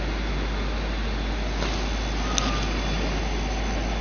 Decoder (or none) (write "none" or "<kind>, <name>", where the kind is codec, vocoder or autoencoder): none